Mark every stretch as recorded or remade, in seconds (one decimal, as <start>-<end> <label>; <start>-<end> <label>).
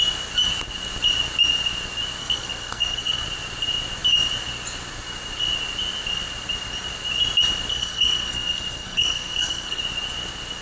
0.0-2.2 recorded; 2.2-3.2 remade; 3.2-7.8 recorded; 7.8-9.8 remade; 9.8-10.6 recorded